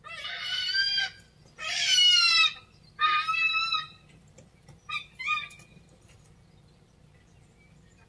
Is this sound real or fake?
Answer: real